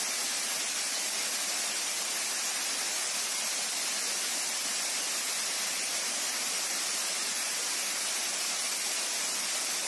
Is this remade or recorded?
recorded